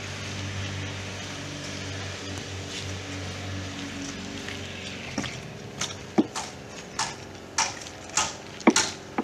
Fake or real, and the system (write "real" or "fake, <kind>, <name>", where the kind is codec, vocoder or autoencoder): real